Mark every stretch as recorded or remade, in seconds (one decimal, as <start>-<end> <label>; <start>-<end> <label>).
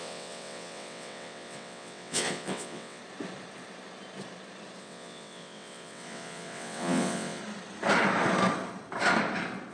0.0-3.0 remade; 3.0-4.8 recorded; 4.8-7.4 remade; 7.4-9.7 recorded